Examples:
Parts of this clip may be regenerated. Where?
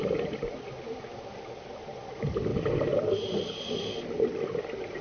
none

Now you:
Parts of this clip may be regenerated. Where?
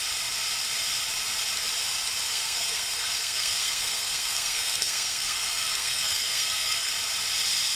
2.3-6.9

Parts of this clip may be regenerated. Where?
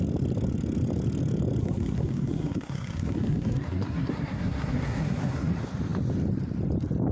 1.6-5.5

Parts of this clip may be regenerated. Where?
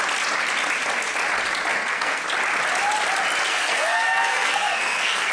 1.7-2.2; 3.5-5.3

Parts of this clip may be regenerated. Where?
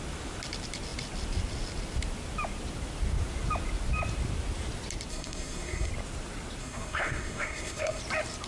5.1-5.9; 6.6-8.0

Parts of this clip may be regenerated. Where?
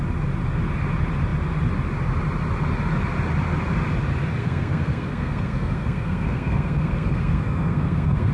4.4-8.3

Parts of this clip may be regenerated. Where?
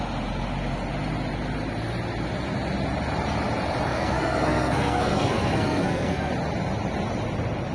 3.9-6.3